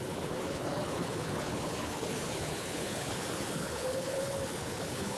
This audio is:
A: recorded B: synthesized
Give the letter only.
B